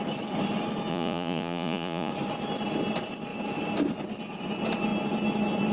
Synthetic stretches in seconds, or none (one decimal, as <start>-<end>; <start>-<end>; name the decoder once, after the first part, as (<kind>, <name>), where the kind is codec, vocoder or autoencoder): 0.9-2.1 (vocoder, Vocos)